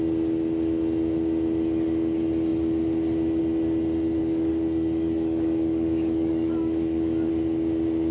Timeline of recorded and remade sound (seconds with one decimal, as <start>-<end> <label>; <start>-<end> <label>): 0.0-4.2 recorded; 4.2-7.3 remade; 7.3-8.1 recorded